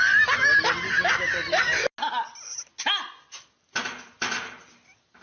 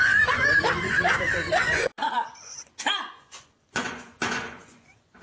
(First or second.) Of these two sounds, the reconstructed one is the second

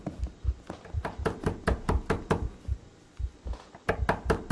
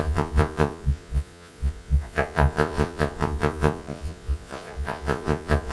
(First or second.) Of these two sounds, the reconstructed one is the second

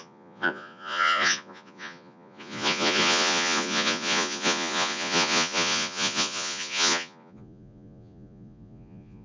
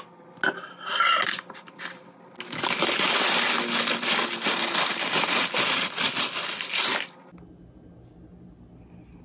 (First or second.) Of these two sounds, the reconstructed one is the first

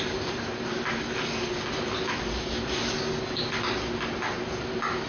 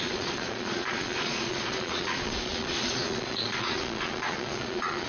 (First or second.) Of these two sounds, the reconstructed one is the second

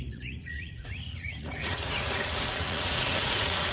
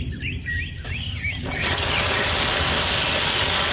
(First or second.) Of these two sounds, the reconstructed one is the first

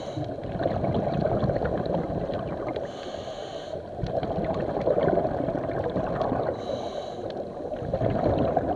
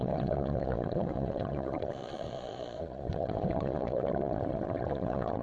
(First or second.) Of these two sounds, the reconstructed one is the second